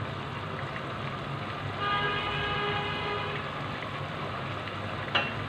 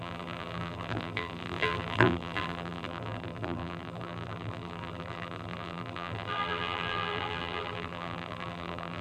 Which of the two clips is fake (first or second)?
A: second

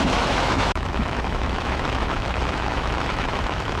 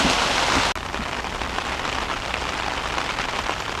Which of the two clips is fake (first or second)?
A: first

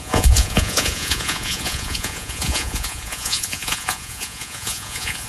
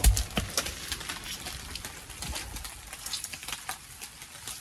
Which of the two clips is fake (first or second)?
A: first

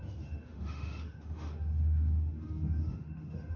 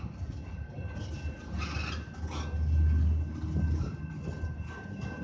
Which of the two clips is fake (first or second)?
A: first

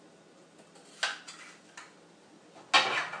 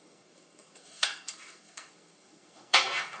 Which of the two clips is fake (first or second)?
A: second